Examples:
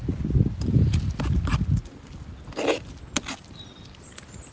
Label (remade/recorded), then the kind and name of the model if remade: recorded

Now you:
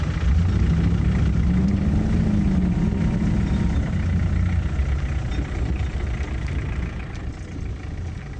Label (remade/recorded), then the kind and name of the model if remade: recorded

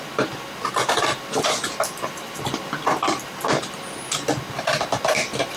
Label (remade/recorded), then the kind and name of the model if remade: recorded